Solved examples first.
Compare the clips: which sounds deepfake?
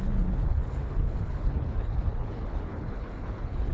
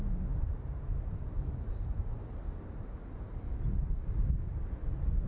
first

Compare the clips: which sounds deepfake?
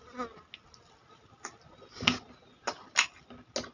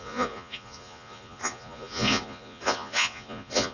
second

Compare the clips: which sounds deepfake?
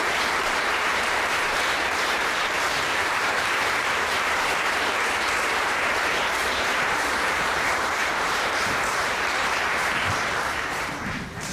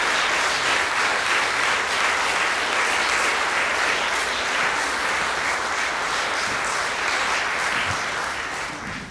first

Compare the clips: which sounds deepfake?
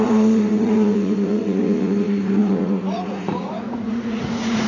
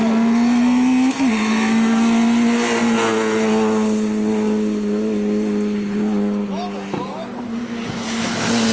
first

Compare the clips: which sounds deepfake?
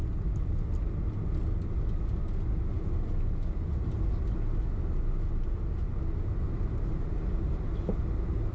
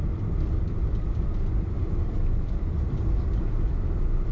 second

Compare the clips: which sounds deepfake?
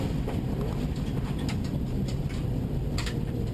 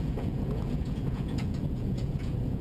second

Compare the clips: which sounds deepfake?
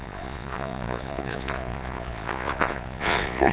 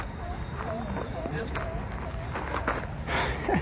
first